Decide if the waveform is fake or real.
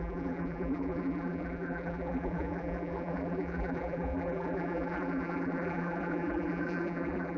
fake